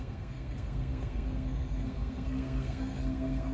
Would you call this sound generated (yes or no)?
yes